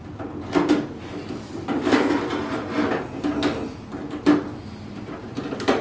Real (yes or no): yes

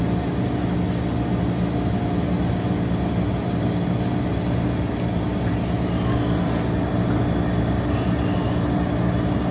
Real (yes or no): yes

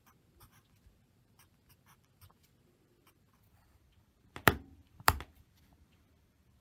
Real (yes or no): no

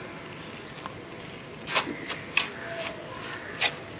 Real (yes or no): yes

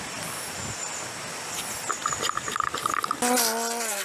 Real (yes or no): yes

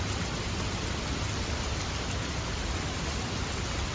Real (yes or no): yes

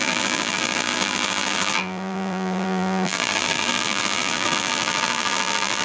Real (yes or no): no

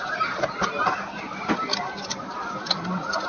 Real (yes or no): yes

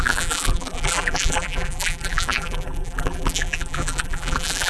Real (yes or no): no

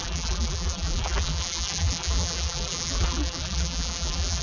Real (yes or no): no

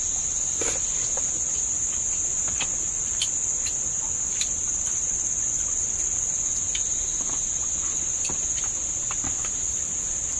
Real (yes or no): yes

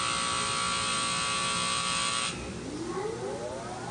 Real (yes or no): yes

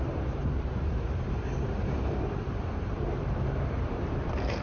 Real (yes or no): no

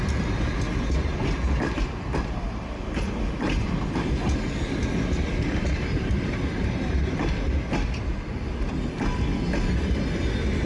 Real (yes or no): yes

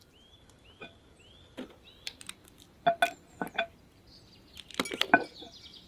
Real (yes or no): yes